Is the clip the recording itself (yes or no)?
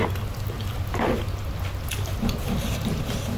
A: yes